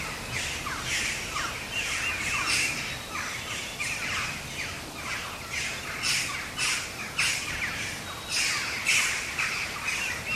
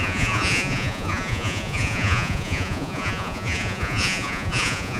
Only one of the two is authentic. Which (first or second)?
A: first